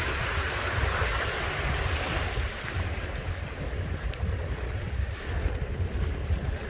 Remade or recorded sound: recorded